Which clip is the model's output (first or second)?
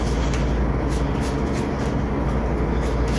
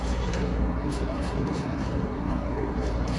second